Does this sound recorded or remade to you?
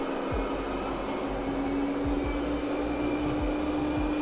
recorded